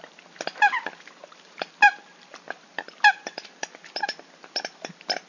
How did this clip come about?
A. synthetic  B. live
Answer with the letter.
B